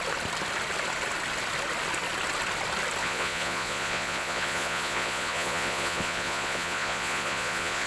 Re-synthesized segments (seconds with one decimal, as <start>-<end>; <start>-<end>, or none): 3.0-7.9